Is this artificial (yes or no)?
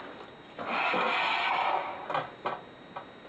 no